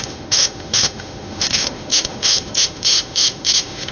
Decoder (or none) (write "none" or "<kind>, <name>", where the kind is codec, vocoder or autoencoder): autoencoder, DAC-VAE